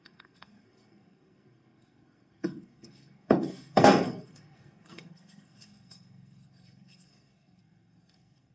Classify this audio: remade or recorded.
remade